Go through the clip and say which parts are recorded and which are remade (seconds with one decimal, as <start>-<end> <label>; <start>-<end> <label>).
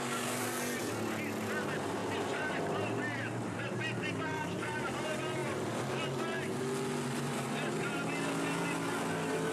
0.0-2.0 recorded; 2.0-4.6 remade; 4.6-9.5 recorded